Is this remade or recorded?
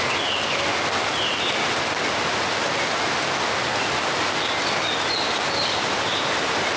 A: recorded